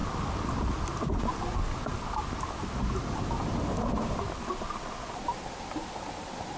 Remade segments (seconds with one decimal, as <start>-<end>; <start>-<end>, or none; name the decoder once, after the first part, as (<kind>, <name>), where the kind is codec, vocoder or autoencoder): none